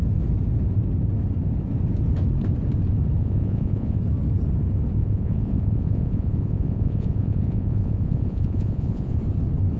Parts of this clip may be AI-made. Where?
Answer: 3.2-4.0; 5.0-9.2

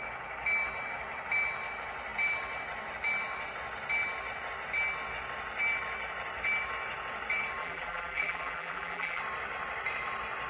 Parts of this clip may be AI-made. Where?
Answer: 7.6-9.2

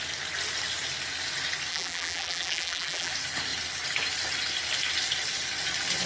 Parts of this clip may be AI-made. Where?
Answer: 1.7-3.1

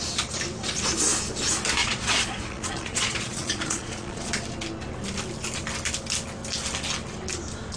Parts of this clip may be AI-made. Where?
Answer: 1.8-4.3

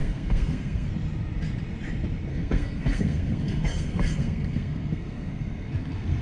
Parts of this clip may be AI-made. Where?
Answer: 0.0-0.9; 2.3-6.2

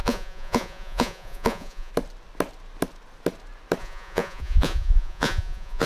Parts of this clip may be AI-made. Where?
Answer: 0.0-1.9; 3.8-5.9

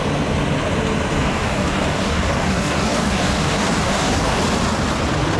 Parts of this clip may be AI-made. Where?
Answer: 1.2-4.4